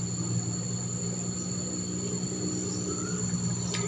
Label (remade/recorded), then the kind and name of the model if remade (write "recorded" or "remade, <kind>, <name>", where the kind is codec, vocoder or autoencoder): recorded